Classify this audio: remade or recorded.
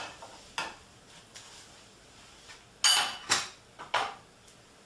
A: recorded